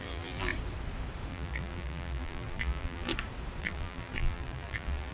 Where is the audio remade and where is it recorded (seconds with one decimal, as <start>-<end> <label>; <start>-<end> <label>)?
0.0-0.5 remade; 0.5-1.3 recorded; 1.3-3.1 remade; 3.1-3.6 recorded; 3.6-5.1 remade